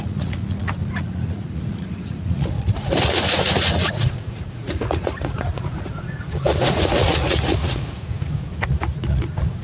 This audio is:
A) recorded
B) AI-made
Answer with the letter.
B